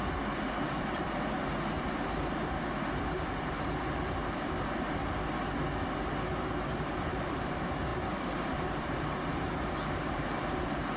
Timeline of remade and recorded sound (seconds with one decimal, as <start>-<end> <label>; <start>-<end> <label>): 0.0-4.2 remade; 4.2-6.5 recorded; 6.5-11.0 remade